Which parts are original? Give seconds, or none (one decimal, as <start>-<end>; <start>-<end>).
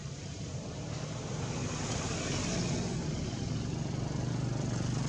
0.0-5.1